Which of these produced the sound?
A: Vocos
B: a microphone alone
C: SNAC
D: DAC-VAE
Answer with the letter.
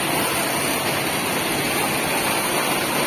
B